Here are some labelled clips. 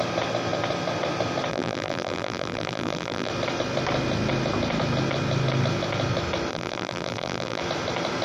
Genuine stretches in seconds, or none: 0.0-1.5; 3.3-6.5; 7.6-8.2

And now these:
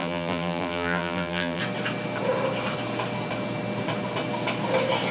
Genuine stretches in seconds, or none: 1.6-5.1